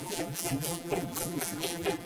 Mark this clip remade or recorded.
remade